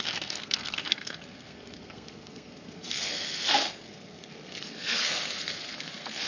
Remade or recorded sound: remade